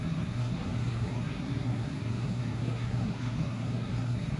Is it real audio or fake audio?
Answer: fake